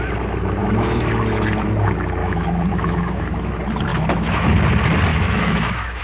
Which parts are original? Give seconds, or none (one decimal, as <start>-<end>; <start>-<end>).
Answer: 0.0-0.6; 1.1-2.2; 3.5-3.9; 4.5-5.1